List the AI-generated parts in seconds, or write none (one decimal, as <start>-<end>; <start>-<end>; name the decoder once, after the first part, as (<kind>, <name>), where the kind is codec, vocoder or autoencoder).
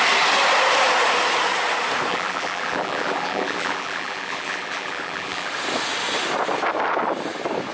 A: 2.1-5.5 (vocoder, BigVGAN v2)